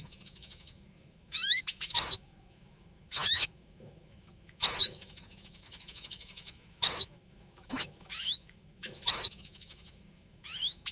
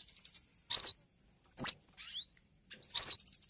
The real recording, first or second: second